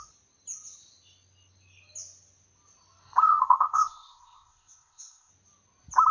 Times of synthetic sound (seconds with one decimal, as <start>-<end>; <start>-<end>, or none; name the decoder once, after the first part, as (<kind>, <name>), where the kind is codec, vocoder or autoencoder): 3.2-5.3 (codec, ZipCodec)